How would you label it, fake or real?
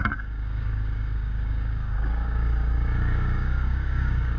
fake